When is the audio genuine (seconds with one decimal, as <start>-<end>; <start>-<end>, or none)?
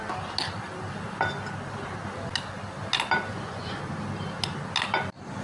0.0-3.3; 3.8-5.4